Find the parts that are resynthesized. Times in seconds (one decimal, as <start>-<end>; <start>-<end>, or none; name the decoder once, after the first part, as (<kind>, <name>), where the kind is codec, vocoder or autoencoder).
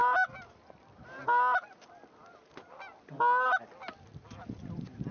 none